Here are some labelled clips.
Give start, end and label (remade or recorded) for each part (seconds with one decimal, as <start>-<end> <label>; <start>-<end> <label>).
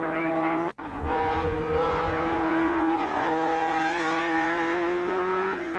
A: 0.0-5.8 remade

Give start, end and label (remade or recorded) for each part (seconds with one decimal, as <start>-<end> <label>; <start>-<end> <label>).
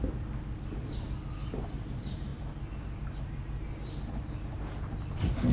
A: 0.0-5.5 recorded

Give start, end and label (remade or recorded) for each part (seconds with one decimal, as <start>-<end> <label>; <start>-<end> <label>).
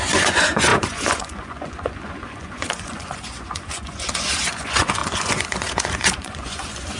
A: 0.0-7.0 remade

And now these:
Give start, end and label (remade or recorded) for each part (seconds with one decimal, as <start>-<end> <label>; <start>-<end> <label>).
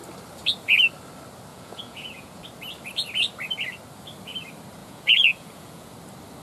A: 0.0-1.5 recorded; 1.5-2.4 remade; 2.4-4.8 recorded; 4.8-5.9 remade; 5.9-6.4 recorded